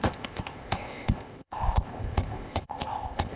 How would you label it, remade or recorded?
remade